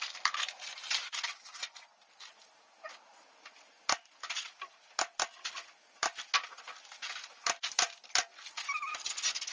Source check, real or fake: real